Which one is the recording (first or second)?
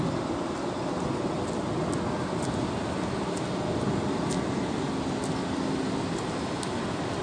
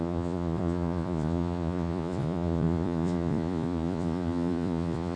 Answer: first